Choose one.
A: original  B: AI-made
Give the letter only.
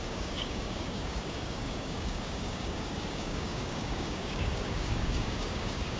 B